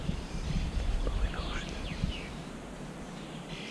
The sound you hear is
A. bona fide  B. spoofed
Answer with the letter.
B